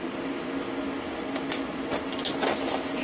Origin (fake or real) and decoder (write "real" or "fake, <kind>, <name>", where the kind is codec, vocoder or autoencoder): real